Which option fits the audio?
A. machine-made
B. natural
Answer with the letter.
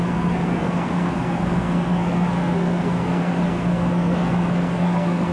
A